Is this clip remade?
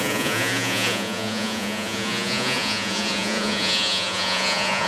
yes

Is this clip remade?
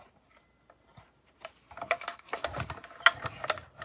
no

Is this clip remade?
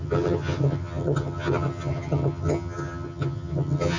yes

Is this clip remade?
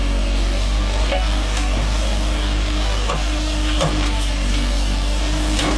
yes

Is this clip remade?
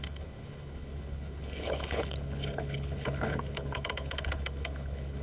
yes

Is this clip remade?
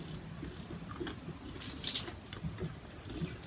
no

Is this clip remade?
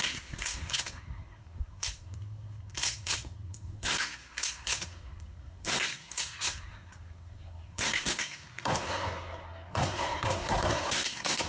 yes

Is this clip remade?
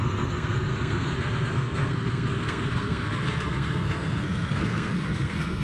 yes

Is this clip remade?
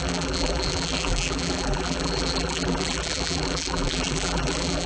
yes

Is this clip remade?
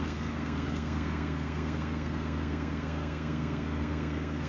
yes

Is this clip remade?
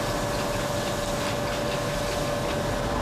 no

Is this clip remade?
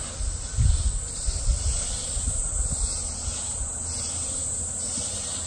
no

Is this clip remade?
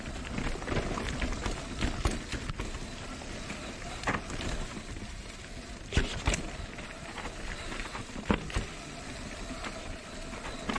no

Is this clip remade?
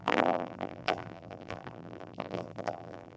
yes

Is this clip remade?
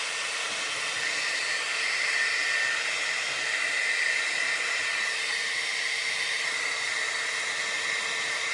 no